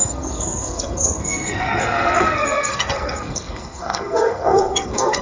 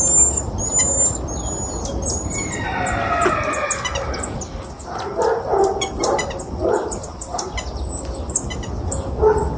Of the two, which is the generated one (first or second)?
first